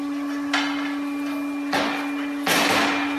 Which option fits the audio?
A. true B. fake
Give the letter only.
A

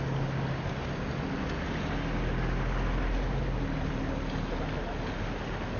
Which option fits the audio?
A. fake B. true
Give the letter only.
B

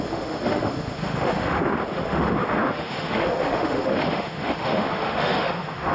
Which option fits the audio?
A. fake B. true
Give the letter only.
A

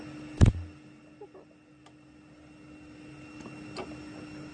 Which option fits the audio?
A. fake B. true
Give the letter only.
B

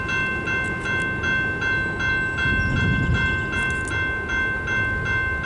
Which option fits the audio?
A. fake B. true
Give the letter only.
B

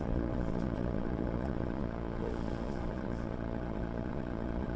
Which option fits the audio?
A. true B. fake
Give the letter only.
B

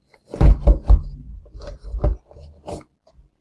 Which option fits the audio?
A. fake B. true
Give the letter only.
B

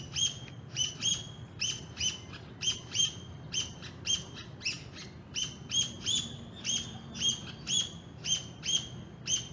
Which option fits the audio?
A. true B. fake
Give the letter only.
A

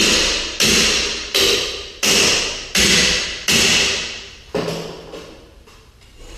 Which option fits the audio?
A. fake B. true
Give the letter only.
B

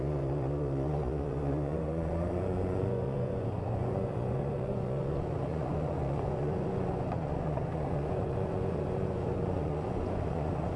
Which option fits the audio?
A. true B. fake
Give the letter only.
B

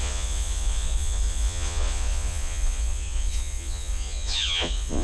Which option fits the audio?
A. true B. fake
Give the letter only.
B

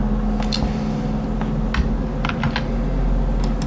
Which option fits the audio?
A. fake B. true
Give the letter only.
B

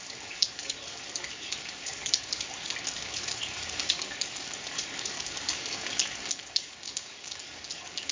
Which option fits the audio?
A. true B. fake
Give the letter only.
B